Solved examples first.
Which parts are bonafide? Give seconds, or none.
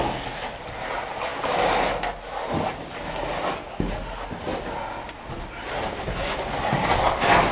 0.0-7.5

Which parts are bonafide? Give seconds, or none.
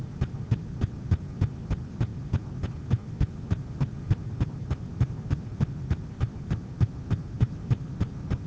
0.0-8.5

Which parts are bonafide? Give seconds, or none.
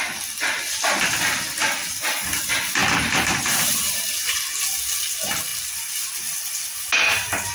0.0-2.8; 4.5-5.5; 6.9-7.5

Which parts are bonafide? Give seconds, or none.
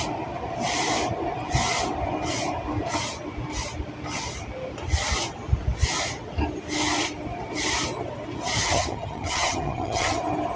0.0-8.6; 10.2-10.6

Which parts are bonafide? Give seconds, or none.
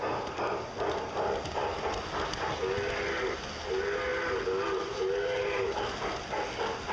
0.0-6.9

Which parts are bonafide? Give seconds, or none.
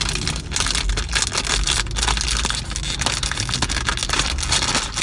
0.0-5.0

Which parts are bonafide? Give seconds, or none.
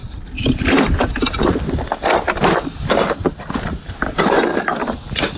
0.0-5.4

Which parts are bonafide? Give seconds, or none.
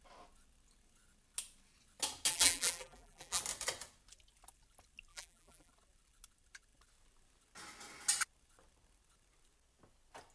0.0-2.3; 3.4-5.1; 5.7-10.3